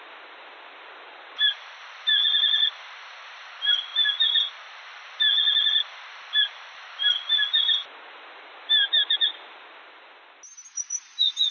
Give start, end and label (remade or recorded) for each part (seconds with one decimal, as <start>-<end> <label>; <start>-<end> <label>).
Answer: 0.0-11.5 recorded